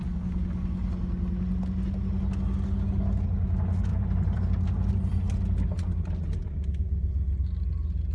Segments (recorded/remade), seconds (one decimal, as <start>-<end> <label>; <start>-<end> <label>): 0.0-3.9 recorded; 3.9-4.4 remade; 4.4-8.1 recorded